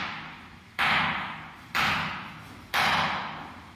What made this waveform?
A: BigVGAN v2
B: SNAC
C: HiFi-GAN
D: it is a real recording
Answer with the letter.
D